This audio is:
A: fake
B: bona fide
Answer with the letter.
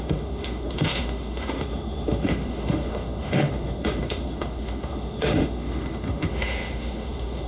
A